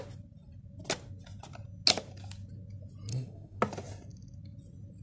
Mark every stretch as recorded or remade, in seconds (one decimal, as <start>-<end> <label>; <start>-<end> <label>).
0.0-3.1 recorded; 3.1-3.6 remade; 3.6-5.0 recorded